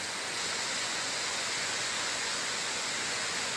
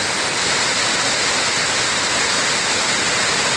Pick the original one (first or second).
second